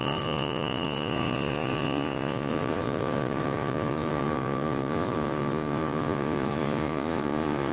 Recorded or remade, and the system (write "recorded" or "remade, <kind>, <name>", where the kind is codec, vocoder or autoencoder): remade, vocoder, Vocos